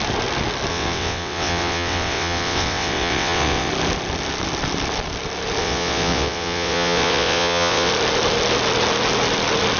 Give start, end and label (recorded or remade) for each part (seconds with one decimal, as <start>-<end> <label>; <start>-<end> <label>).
0.0-0.7 recorded; 0.7-3.7 remade; 3.7-5.6 recorded; 5.6-7.9 remade; 7.9-9.8 recorded